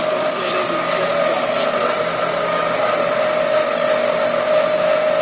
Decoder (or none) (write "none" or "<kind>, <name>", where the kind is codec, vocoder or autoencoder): none